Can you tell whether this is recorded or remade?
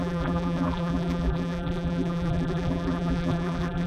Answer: remade